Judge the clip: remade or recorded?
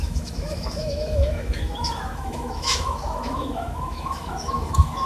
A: remade